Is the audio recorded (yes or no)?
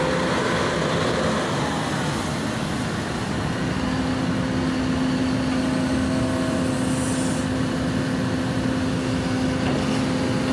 yes